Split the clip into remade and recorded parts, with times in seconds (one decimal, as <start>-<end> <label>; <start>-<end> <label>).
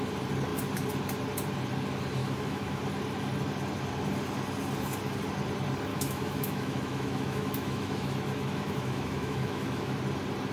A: 0.0-2.2 recorded; 2.2-2.8 remade; 2.8-5.9 recorded; 5.9-10.0 remade; 10.0-10.5 recorded